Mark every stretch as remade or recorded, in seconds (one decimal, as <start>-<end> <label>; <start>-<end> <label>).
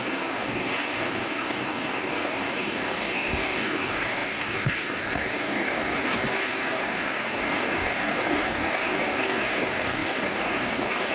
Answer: 0.0-11.1 remade